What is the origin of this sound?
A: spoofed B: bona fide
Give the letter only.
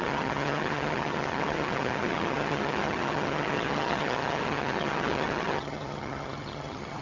A